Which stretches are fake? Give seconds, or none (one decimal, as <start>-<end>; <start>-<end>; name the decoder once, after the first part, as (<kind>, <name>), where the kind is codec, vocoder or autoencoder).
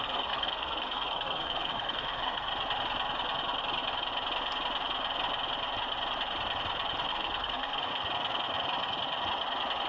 0.0-2.5 (codec, SNAC); 7.1-7.9